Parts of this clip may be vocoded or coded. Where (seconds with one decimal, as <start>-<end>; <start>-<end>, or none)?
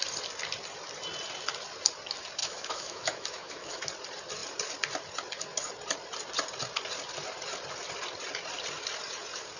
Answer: 2.4-3.8